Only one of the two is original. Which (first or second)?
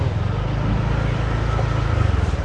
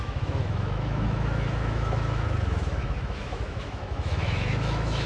first